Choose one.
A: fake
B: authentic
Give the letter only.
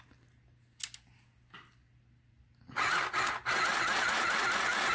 B